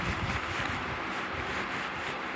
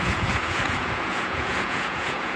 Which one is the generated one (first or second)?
second